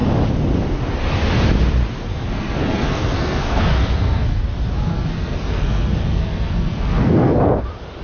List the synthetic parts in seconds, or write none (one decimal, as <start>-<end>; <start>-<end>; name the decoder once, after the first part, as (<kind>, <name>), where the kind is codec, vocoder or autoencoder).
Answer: 2.1-4.4 (codec, SNAC); 4.9-7.4